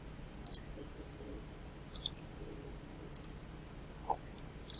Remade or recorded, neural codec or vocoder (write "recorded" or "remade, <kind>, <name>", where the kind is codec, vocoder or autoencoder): recorded